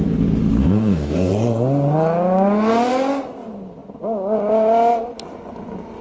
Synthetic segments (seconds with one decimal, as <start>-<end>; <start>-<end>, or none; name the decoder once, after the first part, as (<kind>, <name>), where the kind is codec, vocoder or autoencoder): 0.6-1.3 (codec, DAC)